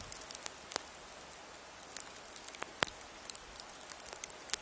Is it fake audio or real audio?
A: real